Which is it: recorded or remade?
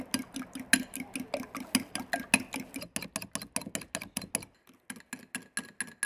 recorded